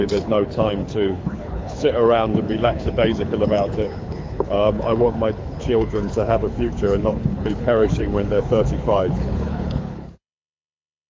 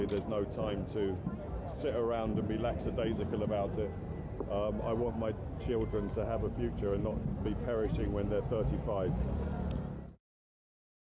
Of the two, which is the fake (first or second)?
first